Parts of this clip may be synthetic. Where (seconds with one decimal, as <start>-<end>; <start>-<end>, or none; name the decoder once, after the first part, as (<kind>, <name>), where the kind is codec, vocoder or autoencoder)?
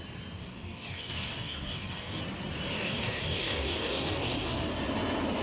0.4-2.2 (codec, DAC); 2.7-4.7